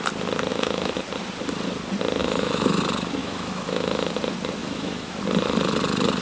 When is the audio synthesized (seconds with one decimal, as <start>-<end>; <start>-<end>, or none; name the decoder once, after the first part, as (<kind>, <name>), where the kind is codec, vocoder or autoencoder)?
0.5-1.0 (autoencoder, DAC-VAE); 2.2-2.8; 3.2-4.1; 4.6-5.2